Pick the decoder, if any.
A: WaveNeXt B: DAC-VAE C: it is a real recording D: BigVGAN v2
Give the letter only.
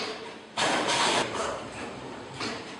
D